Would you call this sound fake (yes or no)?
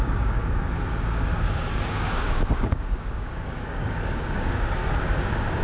yes